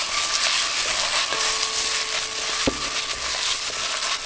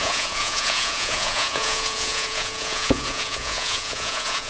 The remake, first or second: second